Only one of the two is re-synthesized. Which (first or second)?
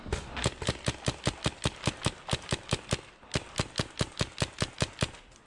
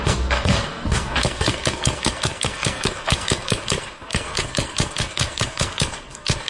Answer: second